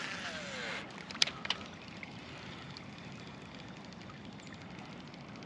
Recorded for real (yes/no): yes